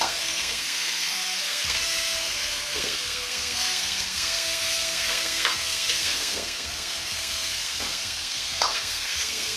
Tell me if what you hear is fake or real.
fake